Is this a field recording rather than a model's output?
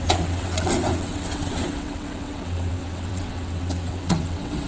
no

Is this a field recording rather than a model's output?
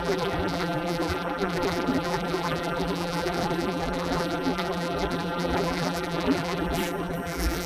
no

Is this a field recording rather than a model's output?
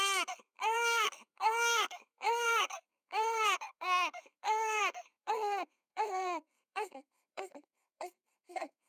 no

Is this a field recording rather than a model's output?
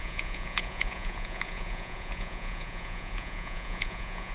no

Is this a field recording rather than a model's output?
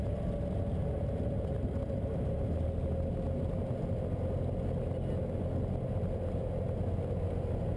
yes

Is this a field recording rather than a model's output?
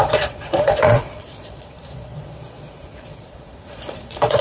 no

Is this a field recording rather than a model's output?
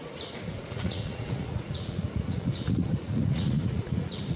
no